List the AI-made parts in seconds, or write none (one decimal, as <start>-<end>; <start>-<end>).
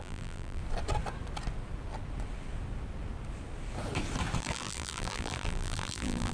0.0-0.6; 4.4-6.3